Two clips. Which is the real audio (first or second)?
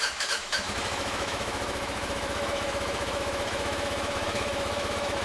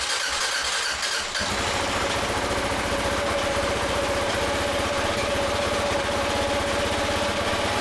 second